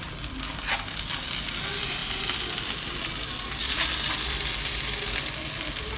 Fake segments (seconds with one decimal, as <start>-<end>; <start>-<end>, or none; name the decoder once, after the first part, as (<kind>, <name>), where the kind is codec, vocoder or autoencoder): none